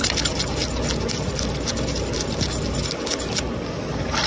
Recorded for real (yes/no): yes